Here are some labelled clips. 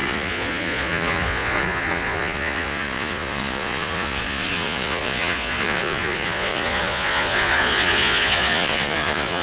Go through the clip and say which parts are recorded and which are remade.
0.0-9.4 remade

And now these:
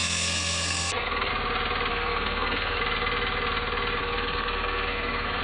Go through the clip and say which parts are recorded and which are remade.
0.0-1.3 remade; 1.3-1.9 recorded; 1.9-2.8 remade; 2.8-4.0 recorded; 4.0-5.4 remade

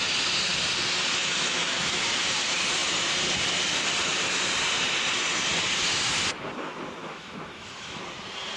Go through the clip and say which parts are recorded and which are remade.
0.0-1.2 recorded; 1.2-2.0 remade; 2.0-7.0 recorded; 7.0-8.0 remade; 8.0-8.6 recorded

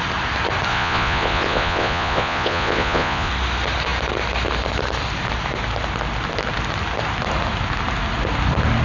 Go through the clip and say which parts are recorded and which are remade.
0.0-0.7 recorded; 0.7-3.3 remade; 3.3-8.8 recorded

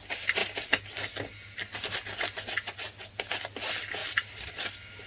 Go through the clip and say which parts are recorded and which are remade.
0.0-5.1 recorded

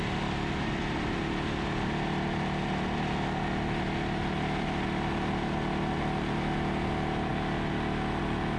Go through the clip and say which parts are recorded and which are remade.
0.0-8.6 recorded